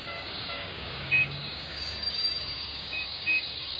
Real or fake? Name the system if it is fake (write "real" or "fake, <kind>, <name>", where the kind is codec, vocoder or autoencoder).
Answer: fake, codec, DAC